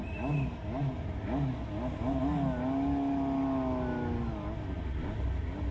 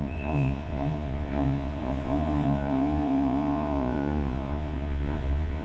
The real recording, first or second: first